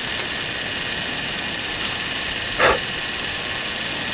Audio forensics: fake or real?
real